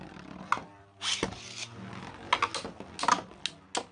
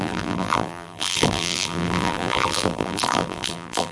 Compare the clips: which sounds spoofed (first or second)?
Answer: second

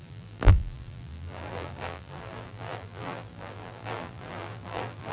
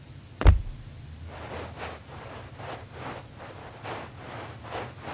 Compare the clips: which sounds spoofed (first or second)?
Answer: first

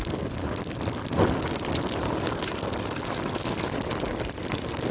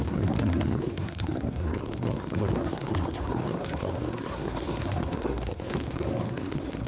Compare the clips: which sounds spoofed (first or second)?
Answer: second